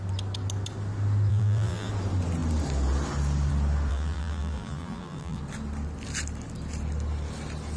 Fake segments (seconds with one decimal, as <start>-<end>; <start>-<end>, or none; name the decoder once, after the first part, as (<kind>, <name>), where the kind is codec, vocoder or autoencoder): 1.3-1.9 (vocoder, BigVGAN v2); 3.9-5.4

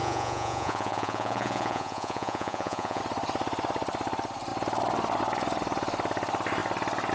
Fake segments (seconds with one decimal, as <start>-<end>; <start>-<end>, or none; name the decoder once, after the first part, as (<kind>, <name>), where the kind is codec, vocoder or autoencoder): 0.0-3.0 (vocoder, Vocos)

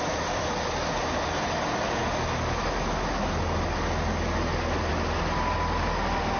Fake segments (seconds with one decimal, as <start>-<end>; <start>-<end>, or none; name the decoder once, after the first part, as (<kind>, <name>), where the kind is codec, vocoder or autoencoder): none